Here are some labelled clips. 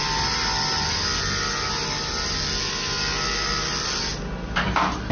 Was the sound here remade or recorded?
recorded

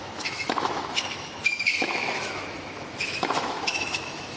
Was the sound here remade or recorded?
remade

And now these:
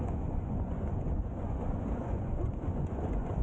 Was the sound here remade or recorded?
remade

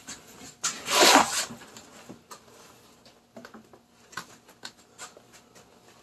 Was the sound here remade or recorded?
recorded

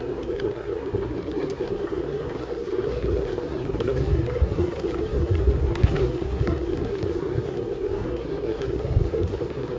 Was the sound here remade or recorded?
remade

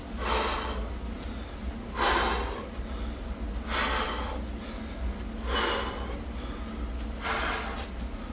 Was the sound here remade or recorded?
recorded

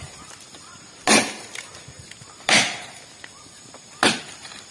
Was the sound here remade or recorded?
recorded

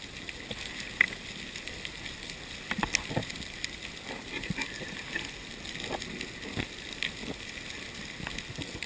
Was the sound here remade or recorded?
recorded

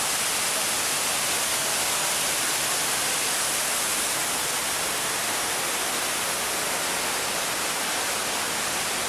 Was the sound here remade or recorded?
recorded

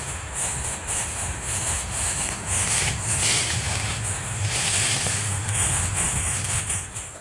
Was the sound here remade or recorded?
remade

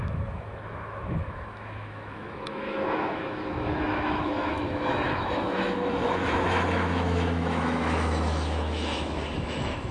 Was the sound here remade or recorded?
remade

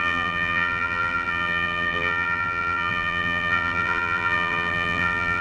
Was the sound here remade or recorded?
remade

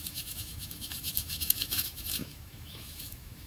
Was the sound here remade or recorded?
remade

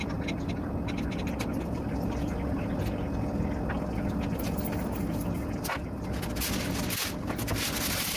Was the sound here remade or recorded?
recorded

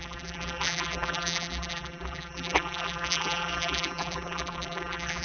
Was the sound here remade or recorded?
remade